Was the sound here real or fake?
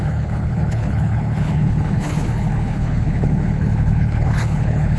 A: fake